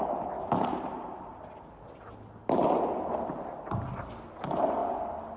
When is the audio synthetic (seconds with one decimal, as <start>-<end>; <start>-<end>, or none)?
none